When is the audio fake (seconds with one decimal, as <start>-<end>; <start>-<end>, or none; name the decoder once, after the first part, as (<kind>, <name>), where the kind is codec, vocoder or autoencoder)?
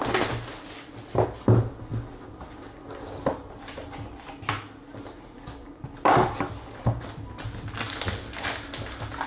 none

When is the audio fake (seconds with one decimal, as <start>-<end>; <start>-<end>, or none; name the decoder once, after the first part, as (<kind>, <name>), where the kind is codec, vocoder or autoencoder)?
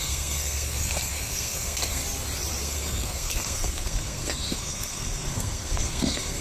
0.0-2.0 (codec, SNAC); 2.6-6.4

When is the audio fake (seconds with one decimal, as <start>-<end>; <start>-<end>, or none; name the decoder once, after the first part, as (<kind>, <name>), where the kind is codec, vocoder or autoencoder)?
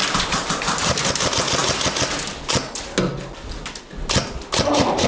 0.0-1.1 (vocoder, BigVGAN v2)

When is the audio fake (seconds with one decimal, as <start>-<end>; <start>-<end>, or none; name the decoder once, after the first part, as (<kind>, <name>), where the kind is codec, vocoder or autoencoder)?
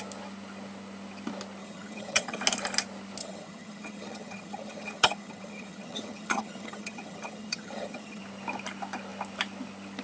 1.6-2.4 (vocoder, HiFi-GAN); 3.2-8.2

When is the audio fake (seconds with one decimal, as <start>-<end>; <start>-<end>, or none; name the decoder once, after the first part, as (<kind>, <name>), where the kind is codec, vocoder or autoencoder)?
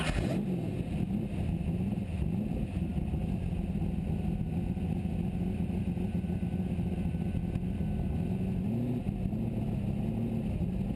none